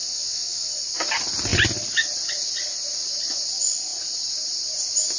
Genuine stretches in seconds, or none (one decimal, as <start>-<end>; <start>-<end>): 0.8-5.2